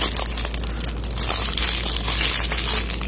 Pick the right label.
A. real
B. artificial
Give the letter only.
A